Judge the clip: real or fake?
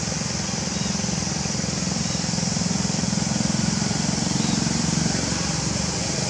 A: fake